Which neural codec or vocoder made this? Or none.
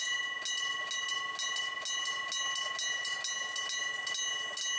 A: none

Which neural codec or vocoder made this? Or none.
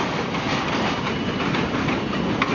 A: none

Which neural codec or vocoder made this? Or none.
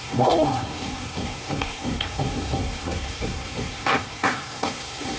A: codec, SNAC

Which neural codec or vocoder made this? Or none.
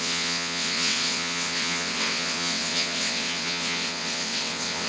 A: vocoder, WaveNeXt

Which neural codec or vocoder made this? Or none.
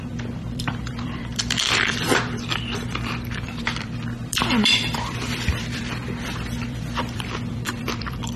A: vocoder, BigVGAN v2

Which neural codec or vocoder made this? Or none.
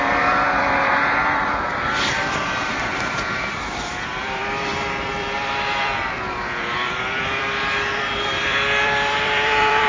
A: vocoder, BigVGAN v2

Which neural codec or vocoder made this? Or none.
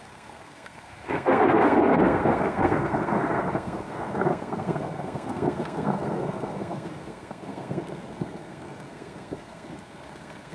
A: codec, SNAC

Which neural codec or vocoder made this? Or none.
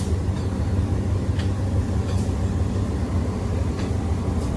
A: none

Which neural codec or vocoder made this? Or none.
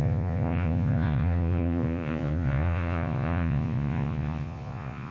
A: vocoder, Vocos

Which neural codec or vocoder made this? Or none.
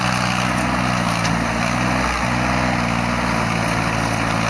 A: none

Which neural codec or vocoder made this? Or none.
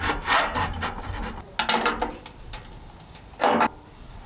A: none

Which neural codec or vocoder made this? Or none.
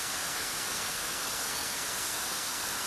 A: codec, SNAC